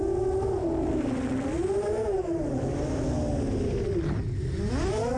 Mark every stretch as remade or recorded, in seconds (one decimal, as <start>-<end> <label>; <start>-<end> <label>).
0.0-5.2 recorded